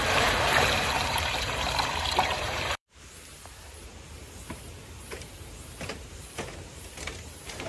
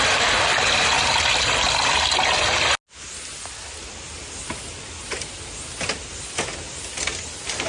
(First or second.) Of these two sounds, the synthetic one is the first